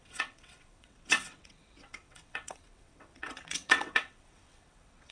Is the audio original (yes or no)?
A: no